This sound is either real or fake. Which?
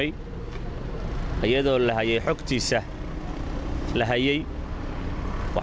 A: real